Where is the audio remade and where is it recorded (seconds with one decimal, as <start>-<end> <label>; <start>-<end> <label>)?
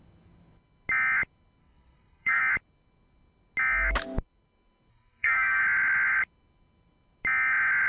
0.0-1.6 recorded; 1.6-2.4 remade; 2.4-4.9 recorded; 4.9-5.6 remade; 5.6-7.9 recorded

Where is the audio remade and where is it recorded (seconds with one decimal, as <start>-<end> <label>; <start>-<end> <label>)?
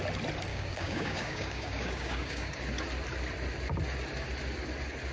0.0-0.5 recorded; 0.5-2.6 remade; 2.6-5.1 recorded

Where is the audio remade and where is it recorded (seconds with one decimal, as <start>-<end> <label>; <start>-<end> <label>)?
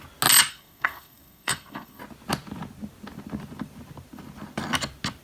0.0-0.5 recorded; 0.5-2.0 remade; 2.0-5.2 recorded